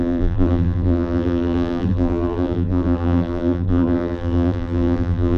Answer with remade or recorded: remade